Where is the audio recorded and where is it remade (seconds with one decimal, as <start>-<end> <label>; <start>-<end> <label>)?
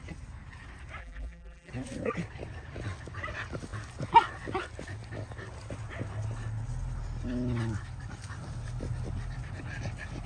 0.0-1.0 recorded; 1.0-1.7 remade; 1.7-10.3 recorded